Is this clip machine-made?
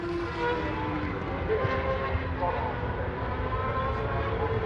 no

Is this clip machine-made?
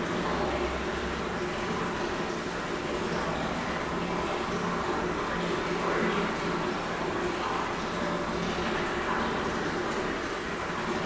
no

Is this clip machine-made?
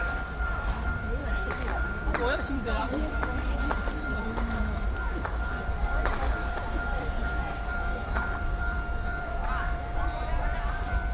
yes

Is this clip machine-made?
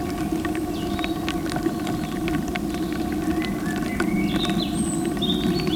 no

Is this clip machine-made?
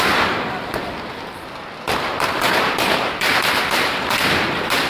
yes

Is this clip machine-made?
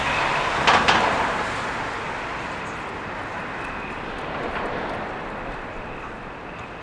no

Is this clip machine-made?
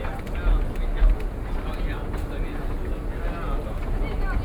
no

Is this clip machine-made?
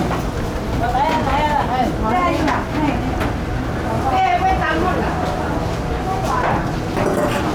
no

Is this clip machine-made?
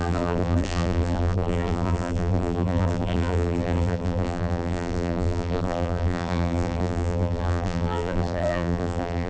yes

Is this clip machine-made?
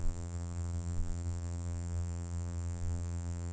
yes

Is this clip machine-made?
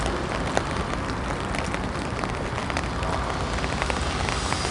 no